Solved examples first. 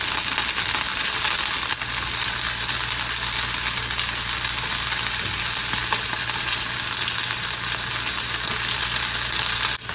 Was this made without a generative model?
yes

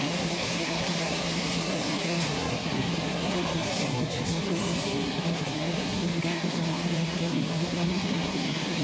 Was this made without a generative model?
no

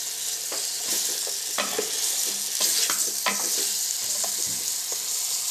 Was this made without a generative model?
yes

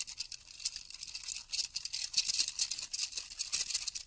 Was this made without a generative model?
yes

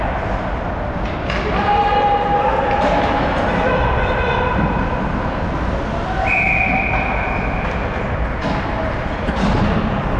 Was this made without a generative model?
yes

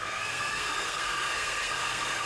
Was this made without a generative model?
no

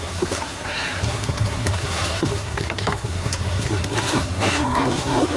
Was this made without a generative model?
no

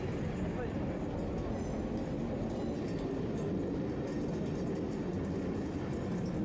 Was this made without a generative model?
yes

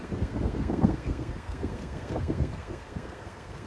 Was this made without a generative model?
no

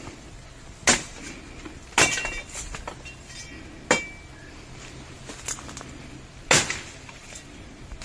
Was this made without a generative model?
yes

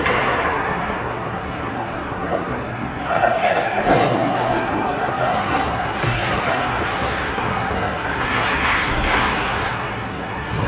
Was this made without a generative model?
no